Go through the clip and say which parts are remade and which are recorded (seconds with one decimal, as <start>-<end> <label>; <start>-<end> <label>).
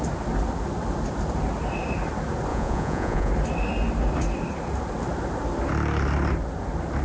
0.0-2.5 recorded; 2.5-3.3 remade; 3.3-7.0 recorded